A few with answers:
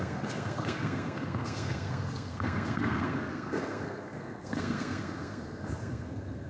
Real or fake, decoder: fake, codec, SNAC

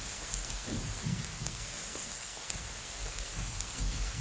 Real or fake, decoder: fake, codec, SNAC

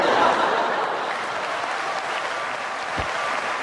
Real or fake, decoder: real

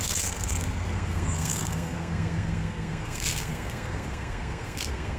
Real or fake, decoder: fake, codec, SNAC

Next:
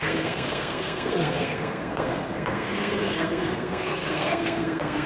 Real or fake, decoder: fake, codec, SNAC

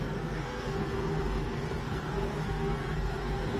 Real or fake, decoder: fake, codec, SNAC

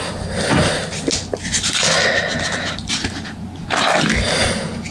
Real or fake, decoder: real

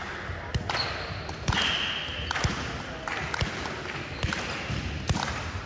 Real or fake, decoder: real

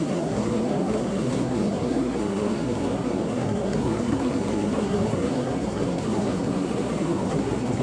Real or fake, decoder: fake, codec, SNAC